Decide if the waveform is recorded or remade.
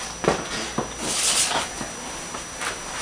recorded